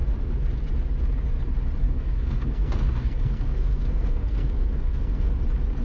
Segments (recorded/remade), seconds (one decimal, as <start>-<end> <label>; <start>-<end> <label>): 0.0-1.8 recorded; 1.8-5.3 remade; 5.3-5.8 recorded

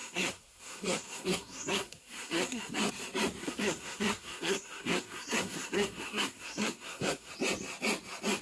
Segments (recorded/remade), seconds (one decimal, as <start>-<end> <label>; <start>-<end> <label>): 0.0-2.9 remade; 2.9-3.4 recorded; 3.4-7.3 remade; 7.3-8.4 recorded

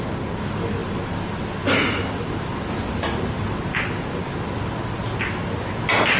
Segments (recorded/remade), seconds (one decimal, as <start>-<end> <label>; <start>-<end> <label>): 0.0-6.2 recorded

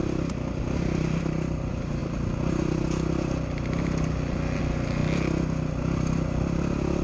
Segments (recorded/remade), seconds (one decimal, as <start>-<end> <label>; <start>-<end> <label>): 0.0-7.0 recorded

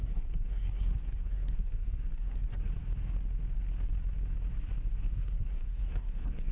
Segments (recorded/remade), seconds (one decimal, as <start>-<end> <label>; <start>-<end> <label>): 0.0-2.7 remade; 2.7-5.0 recorded; 5.0-6.5 remade